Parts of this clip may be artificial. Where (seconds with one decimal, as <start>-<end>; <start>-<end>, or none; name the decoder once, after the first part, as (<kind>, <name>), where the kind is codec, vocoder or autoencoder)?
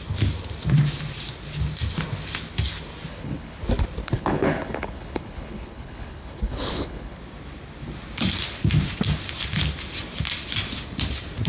3.1-3.6 (codec, HILCodec); 4.0-7.2